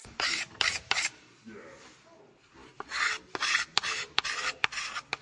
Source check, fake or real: real